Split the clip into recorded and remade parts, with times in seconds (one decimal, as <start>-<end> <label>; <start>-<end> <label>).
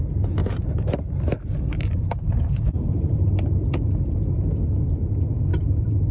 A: 0.0-0.4 recorded; 0.4-4.1 remade; 4.1-5.5 recorded; 5.5-6.1 remade